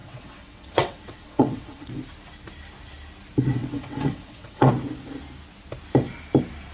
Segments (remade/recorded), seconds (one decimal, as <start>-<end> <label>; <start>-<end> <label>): 0.0-1.9 remade; 1.9-3.6 recorded; 3.6-4.7 remade; 4.7-6.7 recorded